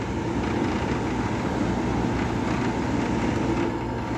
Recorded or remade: recorded